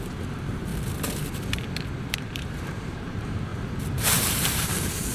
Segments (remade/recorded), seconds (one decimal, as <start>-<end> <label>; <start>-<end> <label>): 0.0-0.7 remade; 0.7-2.0 recorded; 2.0-5.1 remade